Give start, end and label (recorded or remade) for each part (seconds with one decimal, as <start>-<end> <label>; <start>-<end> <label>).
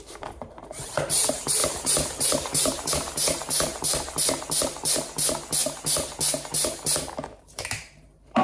0.0-3.7 remade; 3.7-7.4 recorded; 7.4-8.4 remade